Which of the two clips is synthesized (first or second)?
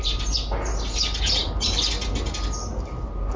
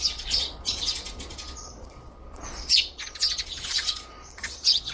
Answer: second